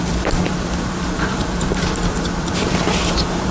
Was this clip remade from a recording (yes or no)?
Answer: yes